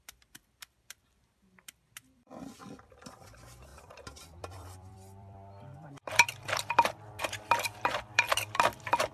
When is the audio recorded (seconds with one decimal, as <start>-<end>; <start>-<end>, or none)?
2.6-3.2